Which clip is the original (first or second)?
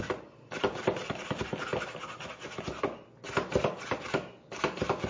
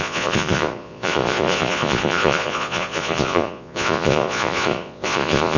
first